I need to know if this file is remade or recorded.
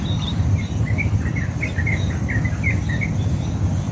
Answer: recorded